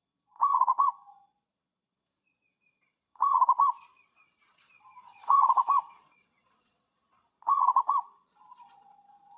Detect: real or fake fake